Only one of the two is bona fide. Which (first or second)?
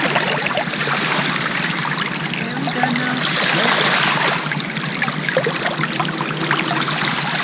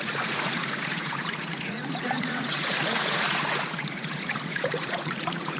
first